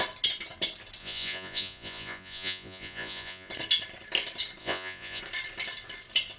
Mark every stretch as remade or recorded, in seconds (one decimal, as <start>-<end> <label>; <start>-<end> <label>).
0.0-1.0 recorded; 1.0-3.5 remade; 3.5-4.6 recorded; 4.6-5.2 remade; 5.2-6.4 recorded